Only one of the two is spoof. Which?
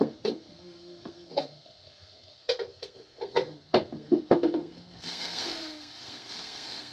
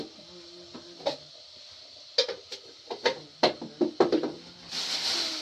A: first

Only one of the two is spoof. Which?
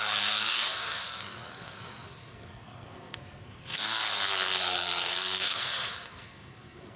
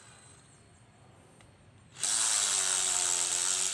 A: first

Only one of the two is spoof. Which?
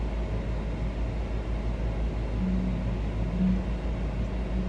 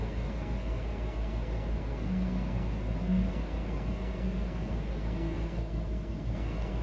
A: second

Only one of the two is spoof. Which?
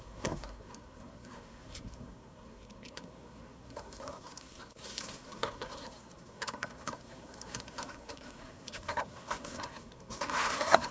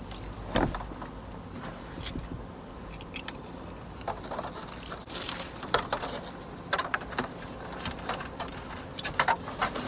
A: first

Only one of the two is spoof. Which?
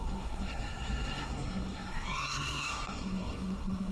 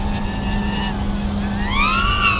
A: first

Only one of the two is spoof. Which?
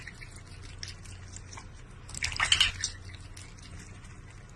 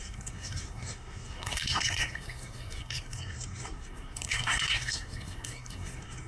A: second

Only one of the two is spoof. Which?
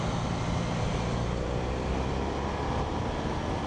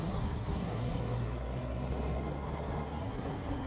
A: second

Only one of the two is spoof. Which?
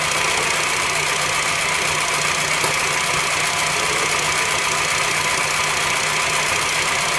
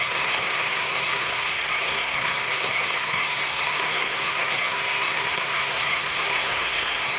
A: second